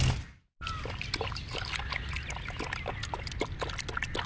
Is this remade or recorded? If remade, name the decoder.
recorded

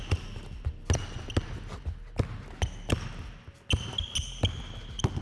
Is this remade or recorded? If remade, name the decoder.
recorded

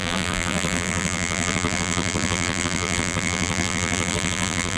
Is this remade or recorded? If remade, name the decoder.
remade, vocoder, BigVGAN v2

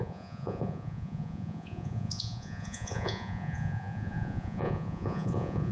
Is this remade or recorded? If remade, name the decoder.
remade, vocoder, Vocos